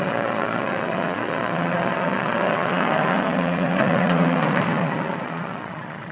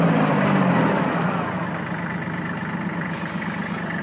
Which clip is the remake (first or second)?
first